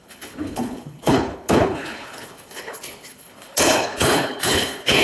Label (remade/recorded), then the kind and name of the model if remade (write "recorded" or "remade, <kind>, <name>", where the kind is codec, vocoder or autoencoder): remade, codec, HILCodec